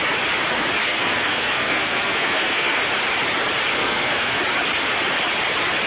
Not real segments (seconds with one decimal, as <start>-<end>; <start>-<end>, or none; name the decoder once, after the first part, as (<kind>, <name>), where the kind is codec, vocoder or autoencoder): 0.8-2.8 (codec, SNAC); 3.7-4.4